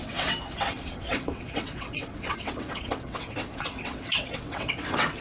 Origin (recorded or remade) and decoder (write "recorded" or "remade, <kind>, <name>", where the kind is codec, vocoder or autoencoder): remade, vocoder, WaveNeXt